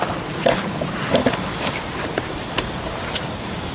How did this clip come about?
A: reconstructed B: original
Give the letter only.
B